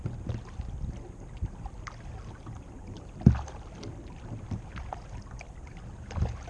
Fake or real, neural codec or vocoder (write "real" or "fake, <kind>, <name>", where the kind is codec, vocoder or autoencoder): real